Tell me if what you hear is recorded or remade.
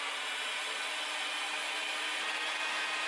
recorded